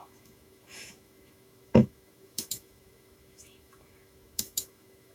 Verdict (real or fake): fake